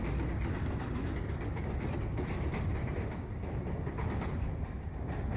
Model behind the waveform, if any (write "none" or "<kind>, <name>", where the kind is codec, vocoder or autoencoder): none